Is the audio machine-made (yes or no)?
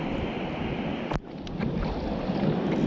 no